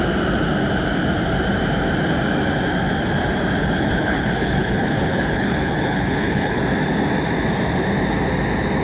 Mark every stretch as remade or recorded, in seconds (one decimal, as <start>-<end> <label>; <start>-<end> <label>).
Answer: 0.0-3.6 recorded; 3.6-6.6 remade; 6.6-8.8 recorded

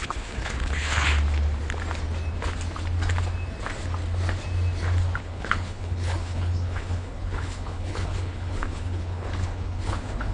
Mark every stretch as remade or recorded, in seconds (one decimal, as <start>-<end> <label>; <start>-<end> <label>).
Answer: 0.0-1.1 remade; 1.1-5.2 recorded; 5.2-10.3 remade

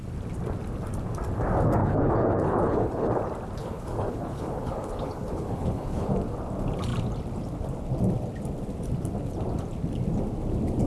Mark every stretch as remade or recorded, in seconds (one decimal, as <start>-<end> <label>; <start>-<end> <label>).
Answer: 0.0-1.8 recorded; 1.8-3.2 remade; 3.2-3.6 recorded; 3.6-6.1 remade; 6.1-10.9 recorded

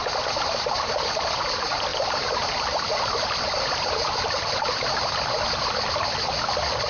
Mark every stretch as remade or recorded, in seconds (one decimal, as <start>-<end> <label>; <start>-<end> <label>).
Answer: 0.0-6.9 recorded